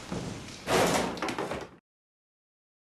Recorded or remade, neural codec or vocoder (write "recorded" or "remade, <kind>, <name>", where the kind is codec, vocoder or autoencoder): recorded